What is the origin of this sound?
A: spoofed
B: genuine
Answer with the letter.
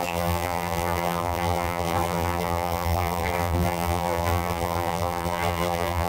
A